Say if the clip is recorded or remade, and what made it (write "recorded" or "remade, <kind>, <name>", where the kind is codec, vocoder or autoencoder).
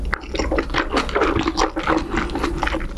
recorded